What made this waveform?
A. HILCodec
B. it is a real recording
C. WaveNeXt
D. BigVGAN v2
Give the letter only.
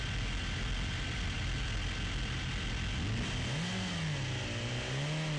B